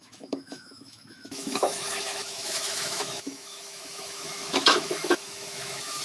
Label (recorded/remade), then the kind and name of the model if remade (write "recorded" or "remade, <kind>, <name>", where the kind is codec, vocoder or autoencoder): remade, autoencoder, DAC-VAE